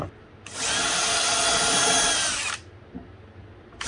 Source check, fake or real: real